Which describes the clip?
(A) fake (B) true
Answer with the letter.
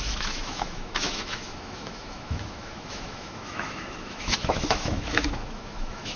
A